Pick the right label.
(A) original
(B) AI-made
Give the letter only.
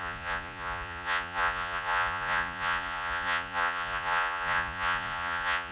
B